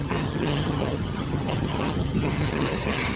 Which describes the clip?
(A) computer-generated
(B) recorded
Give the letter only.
A